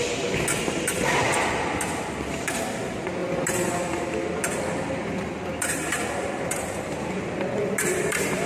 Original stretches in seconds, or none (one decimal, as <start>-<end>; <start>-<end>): 0.0-8.5